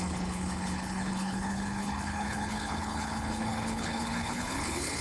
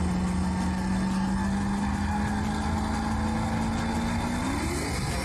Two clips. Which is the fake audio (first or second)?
first